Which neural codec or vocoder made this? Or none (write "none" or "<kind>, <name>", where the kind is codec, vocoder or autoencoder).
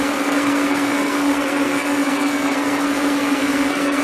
codec, SNAC